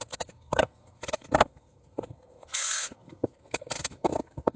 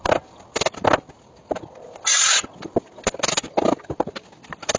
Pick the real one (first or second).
second